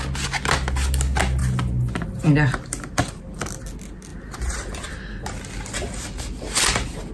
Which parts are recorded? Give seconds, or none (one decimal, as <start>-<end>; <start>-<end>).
0.0-7.1